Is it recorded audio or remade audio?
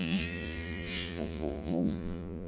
remade